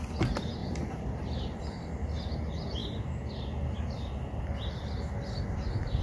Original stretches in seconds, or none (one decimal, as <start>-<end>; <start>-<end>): 0.0-0.6; 1.6-6.0